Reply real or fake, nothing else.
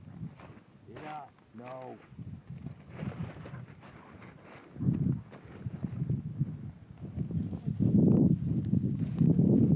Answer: real